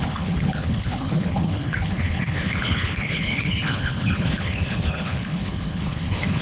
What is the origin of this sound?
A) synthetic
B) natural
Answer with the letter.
A